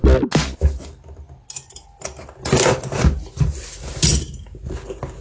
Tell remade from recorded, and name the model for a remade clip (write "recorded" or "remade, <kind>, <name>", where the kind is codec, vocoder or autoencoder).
recorded